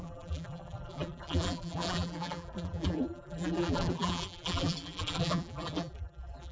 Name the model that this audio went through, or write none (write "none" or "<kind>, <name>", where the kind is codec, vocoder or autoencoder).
vocoder, BigVGAN v2